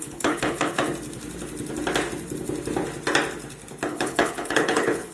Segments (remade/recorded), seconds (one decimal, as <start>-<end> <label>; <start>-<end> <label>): 0.0-0.8 remade; 0.8-3.9 recorded; 3.9-5.1 remade